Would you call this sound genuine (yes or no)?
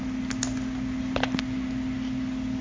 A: yes